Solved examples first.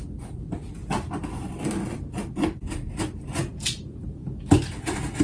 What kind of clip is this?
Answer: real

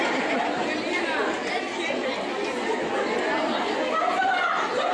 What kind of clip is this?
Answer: real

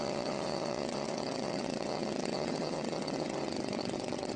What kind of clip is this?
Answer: fake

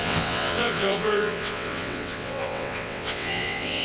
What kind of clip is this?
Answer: fake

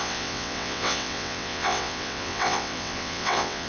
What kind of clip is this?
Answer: fake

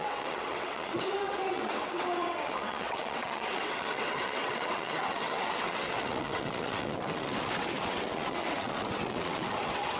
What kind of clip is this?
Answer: fake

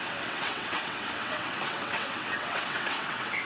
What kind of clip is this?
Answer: fake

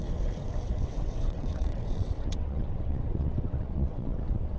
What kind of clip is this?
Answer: fake